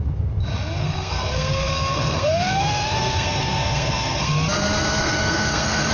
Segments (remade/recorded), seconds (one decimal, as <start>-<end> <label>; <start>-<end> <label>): 0.0-0.8 recorded; 0.8-4.3 remade; 4.3-5.0 recorded; 5.0-5.9 remade